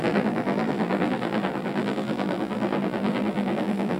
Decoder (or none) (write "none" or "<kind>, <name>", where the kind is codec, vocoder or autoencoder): vocoder, BigVGAN v2